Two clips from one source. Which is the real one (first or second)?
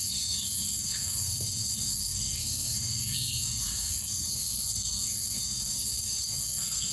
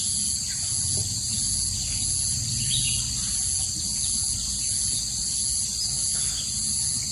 second